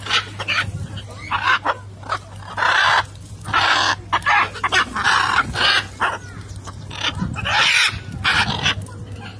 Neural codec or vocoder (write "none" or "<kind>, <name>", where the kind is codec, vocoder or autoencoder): none